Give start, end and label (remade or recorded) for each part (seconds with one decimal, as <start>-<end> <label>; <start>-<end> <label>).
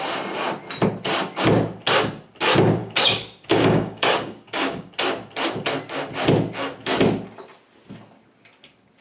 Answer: 0.0-2.8 recorded; 2.8-4.9 remade; 4.9-9.0 recorded